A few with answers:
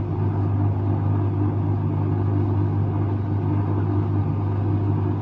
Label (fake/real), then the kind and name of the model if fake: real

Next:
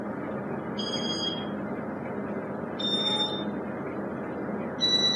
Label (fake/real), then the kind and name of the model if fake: real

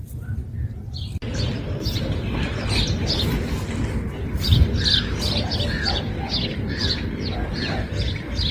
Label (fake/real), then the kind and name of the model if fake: real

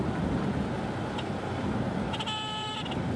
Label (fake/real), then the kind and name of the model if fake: real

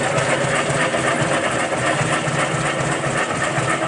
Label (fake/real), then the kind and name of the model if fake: real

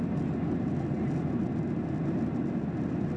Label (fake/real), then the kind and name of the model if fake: real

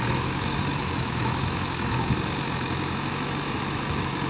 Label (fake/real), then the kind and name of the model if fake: fake, autoencoder, DAC-VAE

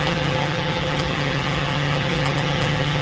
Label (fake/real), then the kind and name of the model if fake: fake, vocoder, HiFi-GAN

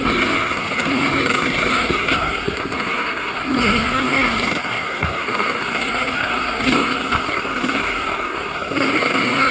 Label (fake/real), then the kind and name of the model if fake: fake, codec, SNAC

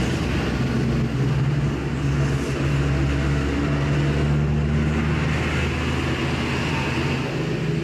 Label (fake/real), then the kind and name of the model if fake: real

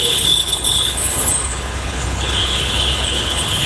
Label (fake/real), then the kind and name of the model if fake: fake, codec, HILCodec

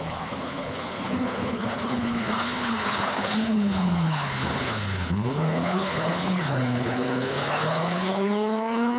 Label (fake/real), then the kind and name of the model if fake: fake, codec, HILCodec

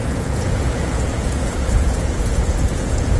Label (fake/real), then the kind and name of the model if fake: fake, vocoder, Vocos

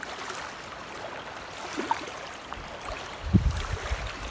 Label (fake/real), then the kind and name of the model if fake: fake, vocoder, BigVGAN v2